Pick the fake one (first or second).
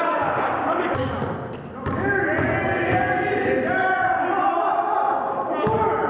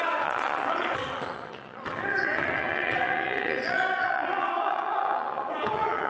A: second